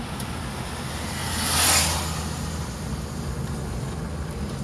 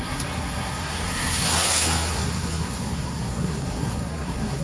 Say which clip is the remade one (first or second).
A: second